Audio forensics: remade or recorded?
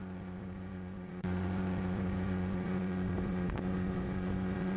remade